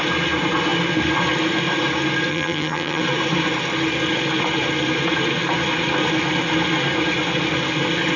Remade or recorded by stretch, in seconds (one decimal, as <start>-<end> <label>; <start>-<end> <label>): 0.0-2.3 recorded; 2.3-3.0 remade; 3.0-8.2 recorded